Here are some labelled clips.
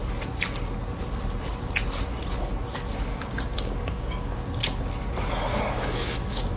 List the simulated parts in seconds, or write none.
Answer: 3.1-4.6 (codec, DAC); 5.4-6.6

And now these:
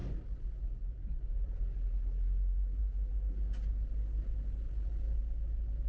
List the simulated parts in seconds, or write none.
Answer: none